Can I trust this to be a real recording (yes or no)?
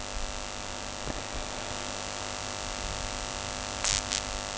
yes